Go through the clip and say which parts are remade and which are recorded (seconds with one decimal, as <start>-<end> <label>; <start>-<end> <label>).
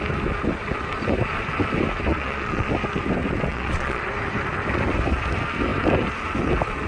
0.0-2.1 recorded; 2.1-2.7 remade; 2.7-3.5 recorded; 3.5-4.0 remade; 4.0-6.9 recorded